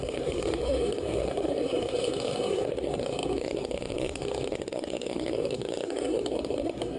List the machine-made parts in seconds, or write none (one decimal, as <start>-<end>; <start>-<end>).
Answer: 0.0-7.0